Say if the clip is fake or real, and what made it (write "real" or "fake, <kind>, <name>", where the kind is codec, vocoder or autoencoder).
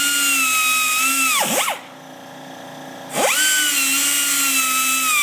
real